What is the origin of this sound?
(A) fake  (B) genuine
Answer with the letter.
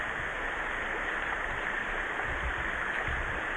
B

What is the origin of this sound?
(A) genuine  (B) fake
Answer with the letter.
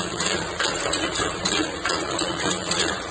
B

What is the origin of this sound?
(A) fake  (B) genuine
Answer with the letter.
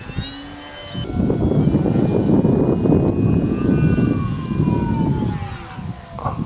B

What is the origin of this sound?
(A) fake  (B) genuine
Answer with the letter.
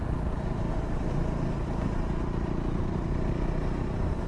B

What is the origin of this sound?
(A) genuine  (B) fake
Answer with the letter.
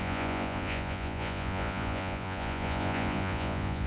B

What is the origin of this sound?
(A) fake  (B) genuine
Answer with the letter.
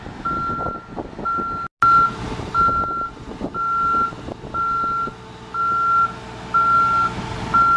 B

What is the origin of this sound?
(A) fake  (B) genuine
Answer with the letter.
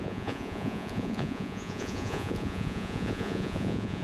A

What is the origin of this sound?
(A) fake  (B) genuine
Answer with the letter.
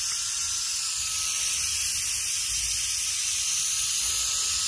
B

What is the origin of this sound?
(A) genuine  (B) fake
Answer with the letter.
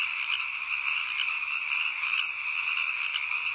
A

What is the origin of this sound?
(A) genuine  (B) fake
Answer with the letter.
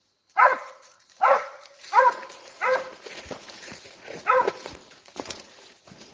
B